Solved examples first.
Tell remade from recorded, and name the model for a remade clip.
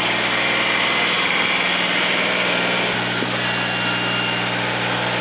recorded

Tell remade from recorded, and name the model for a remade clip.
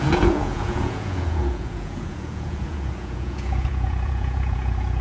remade, vocoder, Vocos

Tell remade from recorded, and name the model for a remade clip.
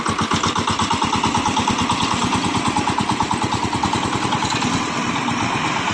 recorded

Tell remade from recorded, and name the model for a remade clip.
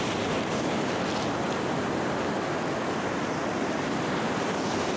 recorded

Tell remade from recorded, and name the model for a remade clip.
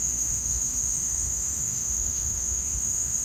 remade, autoencoder, DAC-VAE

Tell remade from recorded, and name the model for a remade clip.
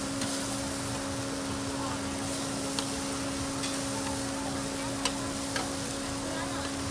recorded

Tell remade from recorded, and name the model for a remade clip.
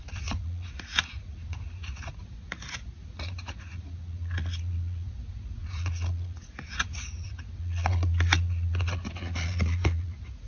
remade, vocoder, Vocos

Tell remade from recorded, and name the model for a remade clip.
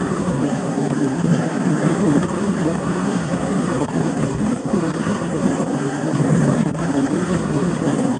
remade, codec, SNAC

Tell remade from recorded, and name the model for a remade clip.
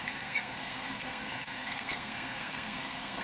remade, codec, SNAC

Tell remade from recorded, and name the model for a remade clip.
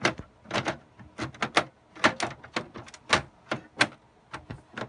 recorded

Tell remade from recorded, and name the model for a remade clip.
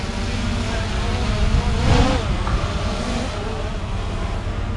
recorded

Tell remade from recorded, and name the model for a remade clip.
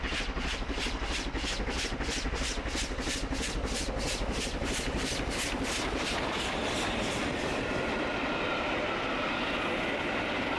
recorded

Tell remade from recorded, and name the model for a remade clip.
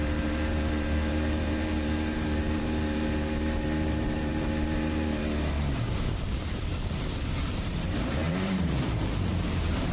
remade, vocoder, BigVGAN v2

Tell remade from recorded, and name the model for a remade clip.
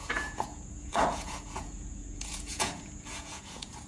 remade, vocoder, Vocos